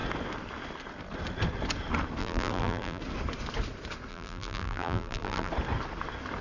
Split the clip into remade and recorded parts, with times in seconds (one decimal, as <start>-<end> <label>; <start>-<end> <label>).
0.0-2.2 recorded; 2.2-3.0 remade; 3.0-4.1 recorded; 4.1-5.5 remade; 5.5-6.4 recorded